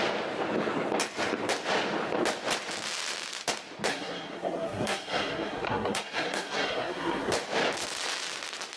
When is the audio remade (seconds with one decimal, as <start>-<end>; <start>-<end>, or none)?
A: 3.9-7.3